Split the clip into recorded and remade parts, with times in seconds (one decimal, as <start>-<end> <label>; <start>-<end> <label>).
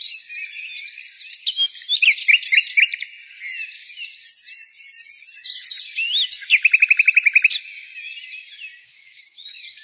0.0-8.8 recorded; 8.8-9.8 remade